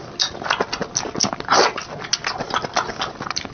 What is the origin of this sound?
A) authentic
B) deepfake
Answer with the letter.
A